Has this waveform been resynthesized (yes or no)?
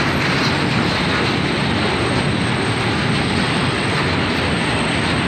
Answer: no